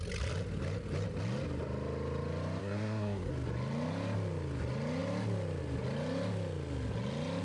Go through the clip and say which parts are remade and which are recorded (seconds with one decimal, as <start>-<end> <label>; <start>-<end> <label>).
0.0-2.6 recorded; 2.6-3.3 remade; 3.3-7.4 recorded